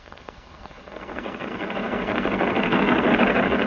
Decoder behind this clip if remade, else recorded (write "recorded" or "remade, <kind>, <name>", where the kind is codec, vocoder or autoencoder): remade, codec, SNAC